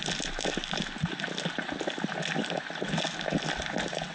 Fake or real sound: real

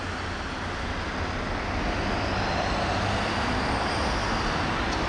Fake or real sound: real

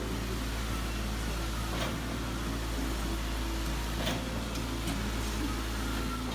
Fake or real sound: real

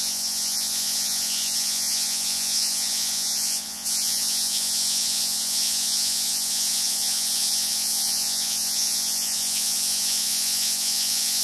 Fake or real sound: fake